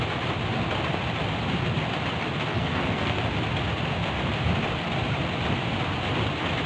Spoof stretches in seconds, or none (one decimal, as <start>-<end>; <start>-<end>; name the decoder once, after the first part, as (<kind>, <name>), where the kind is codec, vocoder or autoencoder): 2.5-3.2 (codec, SNAC)